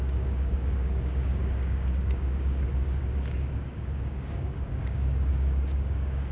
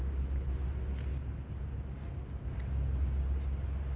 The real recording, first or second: second